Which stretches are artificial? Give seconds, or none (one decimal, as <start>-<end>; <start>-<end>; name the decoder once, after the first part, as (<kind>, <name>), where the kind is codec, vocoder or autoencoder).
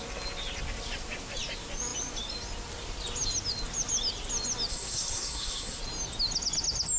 4.7-5.8 (codec, SNAC)